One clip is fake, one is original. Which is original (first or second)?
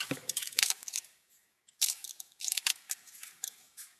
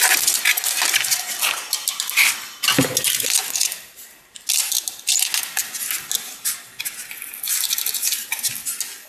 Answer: second